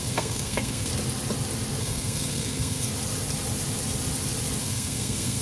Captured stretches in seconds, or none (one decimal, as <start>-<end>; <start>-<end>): 0.9-1.8; 2.9-4.6